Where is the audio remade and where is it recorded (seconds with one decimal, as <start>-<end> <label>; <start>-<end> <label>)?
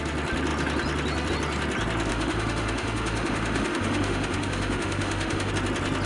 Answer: 0.0-2.1 recorded; 2.1-5.5 remade; 5.5-6.1 recorded